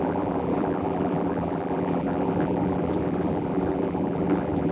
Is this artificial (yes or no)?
yes